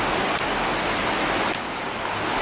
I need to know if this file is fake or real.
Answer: real